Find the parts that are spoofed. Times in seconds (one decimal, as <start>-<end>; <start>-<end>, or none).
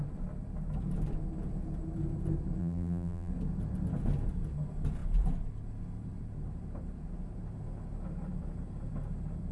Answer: 2.6-3.3